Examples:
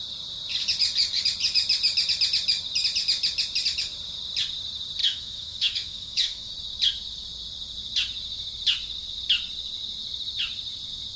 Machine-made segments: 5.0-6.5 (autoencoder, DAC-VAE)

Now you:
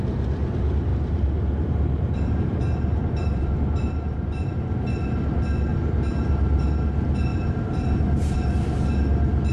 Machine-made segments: 0.9-4.5 (vocoder, BigVGAN v2); 5.7-6.7; 7.3-8.5

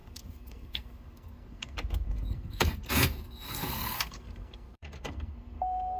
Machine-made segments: 0.0-6.0 (codec, SNAC)

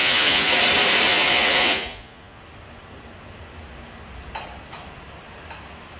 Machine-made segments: 0.0-0.6 (vocoder, Vocos); 1.1-2.4

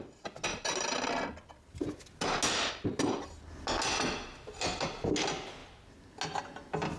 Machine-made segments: none

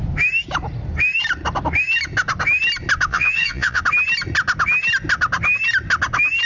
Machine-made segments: 3.1-3.8 (vocoder, Vocos)

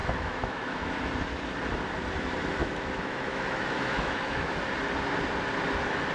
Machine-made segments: 0.0-1.1 (autoencoder, DAC-VAE); 2.6-4.6

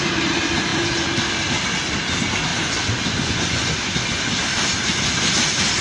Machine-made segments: 2.5-3.7 (vocoder, Vocos)